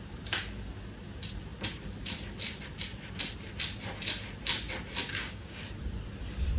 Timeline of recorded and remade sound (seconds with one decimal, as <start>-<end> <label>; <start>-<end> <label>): 0.0-5.0 recorded; 5.0-5.6 remade; 5.6-6.6 recorded